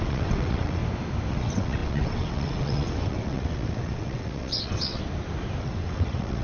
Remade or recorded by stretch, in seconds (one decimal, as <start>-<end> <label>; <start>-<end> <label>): 0.0-0.8 remade; 0.8-1.3 recorded; 1.3-5.0 remade; 5.0-5.6 recorded; 5.6-6.4 remade